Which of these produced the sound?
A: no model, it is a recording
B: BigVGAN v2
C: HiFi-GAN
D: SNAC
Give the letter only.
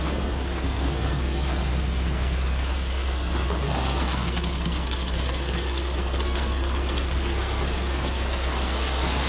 D